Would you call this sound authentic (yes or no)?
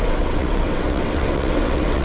no